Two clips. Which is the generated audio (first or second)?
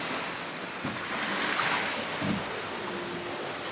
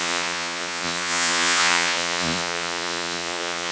second